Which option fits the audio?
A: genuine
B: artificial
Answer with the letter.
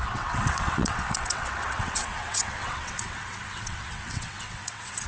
B